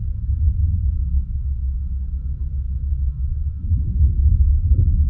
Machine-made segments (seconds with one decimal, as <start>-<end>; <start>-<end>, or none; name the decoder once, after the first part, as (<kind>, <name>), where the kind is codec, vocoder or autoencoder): 2.9-4.0 (vocoder, Vocos)